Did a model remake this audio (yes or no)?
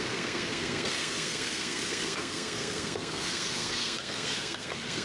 yes